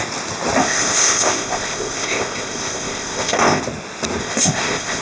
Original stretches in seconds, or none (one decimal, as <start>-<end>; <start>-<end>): 0.0-0.6; 3.6-4.2